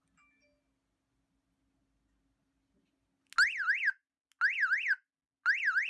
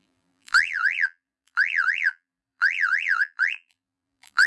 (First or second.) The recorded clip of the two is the first